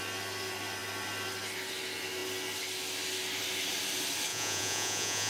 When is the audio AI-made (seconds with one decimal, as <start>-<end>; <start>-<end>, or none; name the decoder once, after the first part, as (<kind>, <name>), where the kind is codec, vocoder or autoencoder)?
4.3-5.3 (vocoder, Vocos)